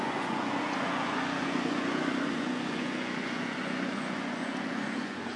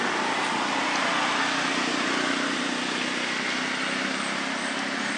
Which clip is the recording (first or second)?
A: second